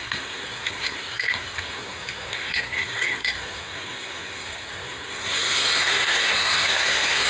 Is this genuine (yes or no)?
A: no